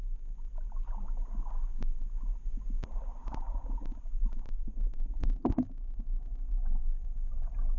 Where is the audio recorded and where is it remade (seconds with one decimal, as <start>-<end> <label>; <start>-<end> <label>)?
0.0-3.2 recorded; 3.2-4.0 remade; 4.0-5.1 recorded; 5.1-6.6 remade; 6.6-7.8 recorded